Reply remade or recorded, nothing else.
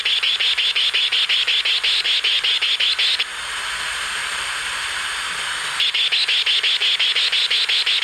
recorded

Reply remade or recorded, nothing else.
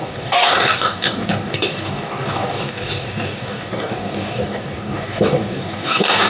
remade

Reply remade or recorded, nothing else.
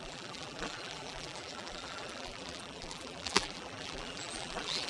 remade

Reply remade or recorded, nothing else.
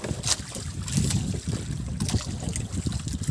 recorded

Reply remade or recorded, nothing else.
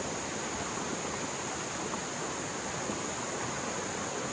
recorded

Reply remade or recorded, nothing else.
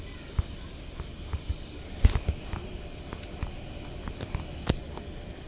recorded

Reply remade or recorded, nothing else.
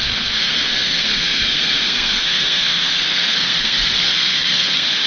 remade